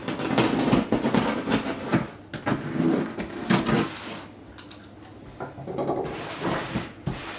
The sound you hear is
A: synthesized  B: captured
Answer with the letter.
B